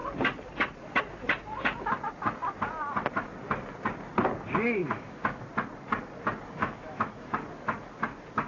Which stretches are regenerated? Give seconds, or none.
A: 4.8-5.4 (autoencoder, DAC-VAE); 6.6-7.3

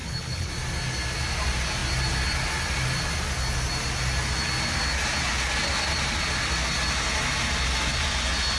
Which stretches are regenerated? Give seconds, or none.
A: 0.0-0.5 (codec, HILCodec)

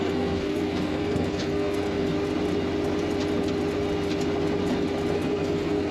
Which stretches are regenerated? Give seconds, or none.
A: 0.0-2.1 (codec, SNAC); 5.1-5.9

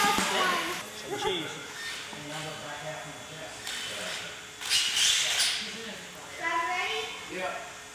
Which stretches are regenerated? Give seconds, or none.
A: none

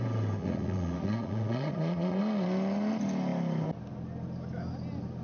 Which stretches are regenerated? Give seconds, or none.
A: 0.4-2.2 (vocoder, Vocos)

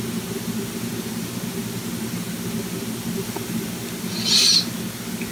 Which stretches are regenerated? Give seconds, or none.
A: none

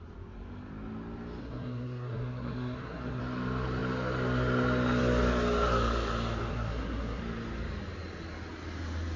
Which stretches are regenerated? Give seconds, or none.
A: 1.4-3.2 (codec, SNAC); 6.5-7.2

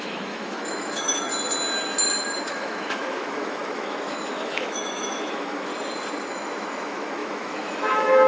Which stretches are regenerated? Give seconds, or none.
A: 0.0-1.3 (autoencoder, DAC-VAE); 2.4-5.7; 6.3-8.3